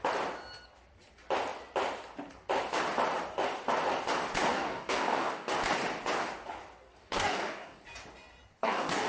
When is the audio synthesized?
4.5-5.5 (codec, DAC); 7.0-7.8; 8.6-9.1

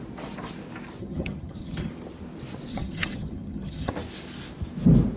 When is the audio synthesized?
1.0-1.9 (vocoder, HiFi-GAN); 2.7-3.9